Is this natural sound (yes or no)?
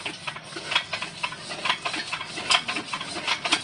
yes